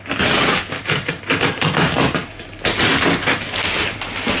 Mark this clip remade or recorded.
recorded